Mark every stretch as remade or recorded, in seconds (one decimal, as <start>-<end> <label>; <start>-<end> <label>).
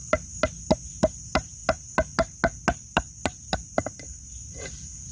0.0-5.1 recorded